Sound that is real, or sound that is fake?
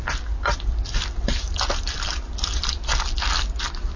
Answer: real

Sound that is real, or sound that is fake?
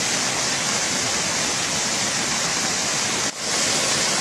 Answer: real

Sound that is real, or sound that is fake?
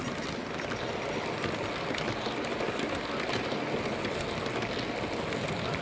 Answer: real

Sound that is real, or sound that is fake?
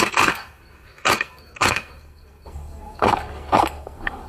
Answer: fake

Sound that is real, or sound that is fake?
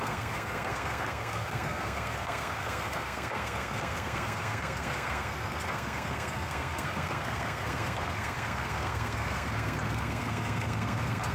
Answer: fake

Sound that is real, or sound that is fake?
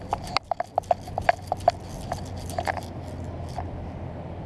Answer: real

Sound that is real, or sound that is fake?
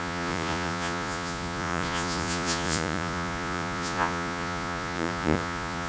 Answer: fake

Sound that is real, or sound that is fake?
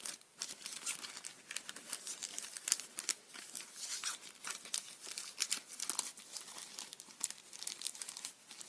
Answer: real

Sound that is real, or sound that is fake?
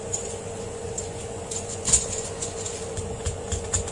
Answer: fake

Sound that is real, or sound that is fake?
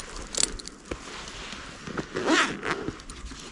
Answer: real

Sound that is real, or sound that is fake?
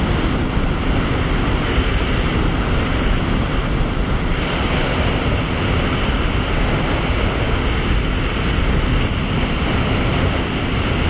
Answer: real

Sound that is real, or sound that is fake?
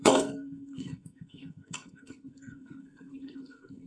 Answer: fake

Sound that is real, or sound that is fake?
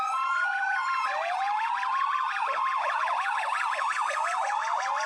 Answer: fake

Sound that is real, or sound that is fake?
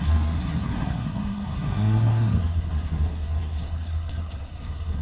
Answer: fake